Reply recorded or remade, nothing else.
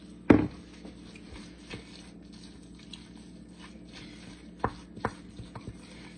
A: recorded